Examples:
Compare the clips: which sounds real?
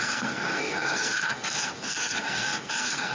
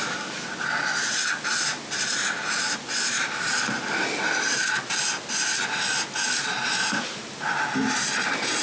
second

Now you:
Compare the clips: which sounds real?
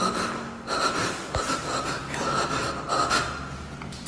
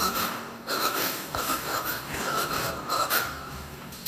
first